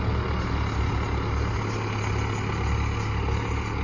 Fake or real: real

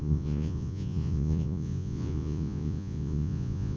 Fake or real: fake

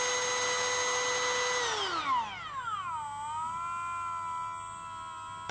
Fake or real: real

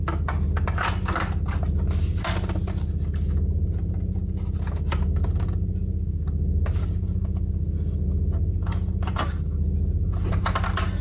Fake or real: real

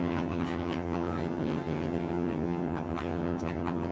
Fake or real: fake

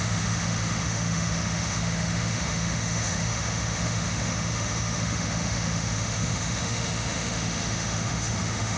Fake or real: fake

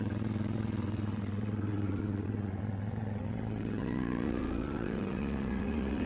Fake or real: fake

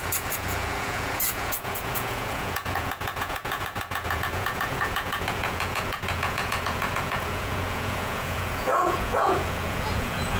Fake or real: fake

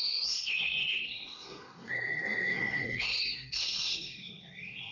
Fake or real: fake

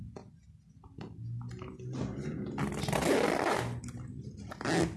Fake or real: real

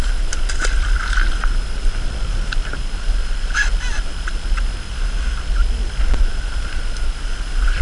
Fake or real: real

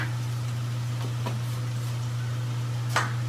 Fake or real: real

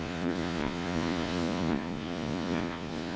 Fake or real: fake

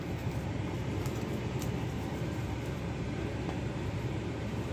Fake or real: fake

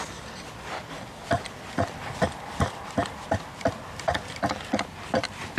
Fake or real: fake